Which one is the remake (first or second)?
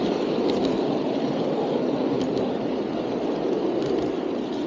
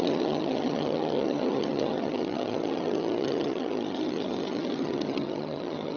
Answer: second